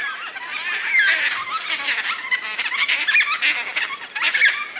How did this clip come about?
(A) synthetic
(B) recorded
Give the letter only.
B